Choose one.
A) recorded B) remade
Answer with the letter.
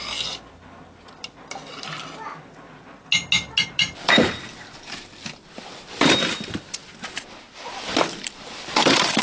A